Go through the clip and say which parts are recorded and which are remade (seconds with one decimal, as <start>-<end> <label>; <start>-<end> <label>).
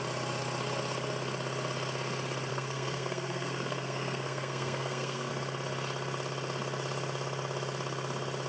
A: 0.0-2.5 recorded; 2.5-5.3 remade; 5.3-8.5 recorded